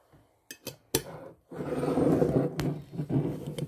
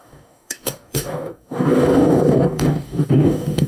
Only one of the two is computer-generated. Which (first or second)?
second